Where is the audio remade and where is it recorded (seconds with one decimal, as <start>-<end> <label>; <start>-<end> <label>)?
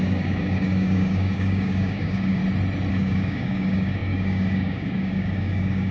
0.0-2.4 remade; 2.4-2.9 recorded; 2.9-5.9 remade